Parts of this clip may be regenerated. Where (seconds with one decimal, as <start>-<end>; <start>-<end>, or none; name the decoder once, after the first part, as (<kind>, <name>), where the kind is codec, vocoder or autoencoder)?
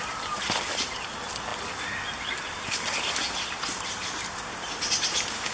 none